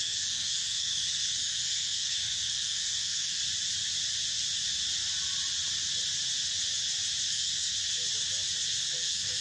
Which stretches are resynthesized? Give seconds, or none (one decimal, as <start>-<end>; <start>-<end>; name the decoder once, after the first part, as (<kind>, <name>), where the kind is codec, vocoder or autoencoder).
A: 0.0-3.4 (codec, SNAC); 7.3-7.7; 8.8-9.4

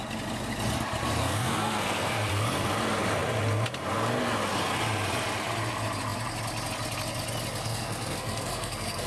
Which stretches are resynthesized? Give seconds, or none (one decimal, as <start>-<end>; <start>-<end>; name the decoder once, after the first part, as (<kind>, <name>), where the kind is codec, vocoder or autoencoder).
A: 1.2-2.3 (codec, SNAC); 7.6-9.1